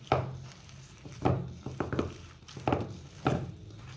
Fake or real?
real